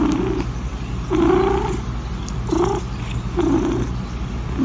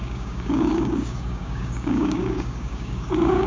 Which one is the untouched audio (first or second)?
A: first